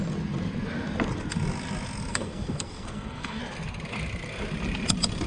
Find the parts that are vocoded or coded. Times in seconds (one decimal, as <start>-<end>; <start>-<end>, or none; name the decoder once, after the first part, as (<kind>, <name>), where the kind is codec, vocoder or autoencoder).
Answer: 2.1-3.4 (codec, SNAC)